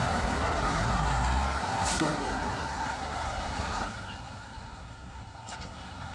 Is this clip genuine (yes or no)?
no